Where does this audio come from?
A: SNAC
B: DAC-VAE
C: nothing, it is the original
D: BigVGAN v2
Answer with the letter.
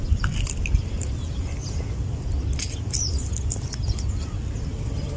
C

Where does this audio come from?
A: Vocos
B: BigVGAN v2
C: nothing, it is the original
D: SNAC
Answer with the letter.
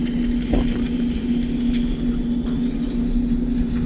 C